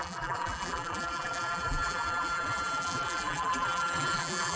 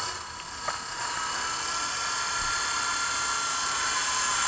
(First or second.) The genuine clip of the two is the second